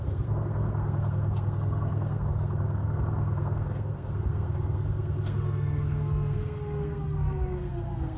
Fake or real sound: fake